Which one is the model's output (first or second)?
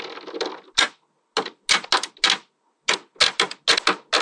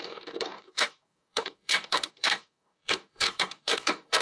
second